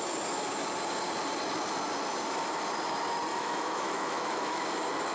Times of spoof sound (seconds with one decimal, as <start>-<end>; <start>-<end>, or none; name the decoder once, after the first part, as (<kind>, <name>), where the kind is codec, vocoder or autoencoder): 3.3-4.6 (autoencoder, DAC-VAE)